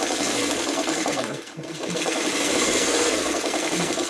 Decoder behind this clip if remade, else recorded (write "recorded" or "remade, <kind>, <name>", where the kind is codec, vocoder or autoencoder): remade, codec, SNAC